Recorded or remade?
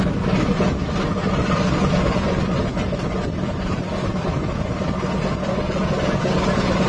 recorded